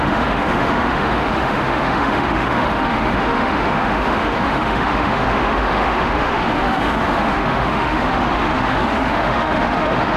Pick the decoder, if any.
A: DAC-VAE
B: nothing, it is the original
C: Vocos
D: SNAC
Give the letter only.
A